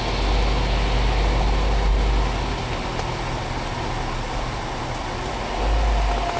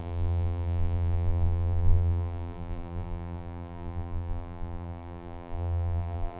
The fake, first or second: second